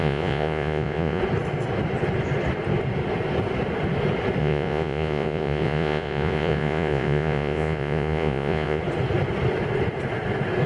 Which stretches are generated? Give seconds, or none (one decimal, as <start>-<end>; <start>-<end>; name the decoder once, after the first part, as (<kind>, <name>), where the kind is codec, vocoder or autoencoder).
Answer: 0.0-1.2 (vocoder, Vocos); 4.4-8.8